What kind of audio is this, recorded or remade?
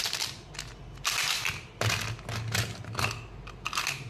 recorded